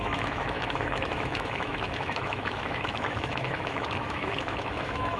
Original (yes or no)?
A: no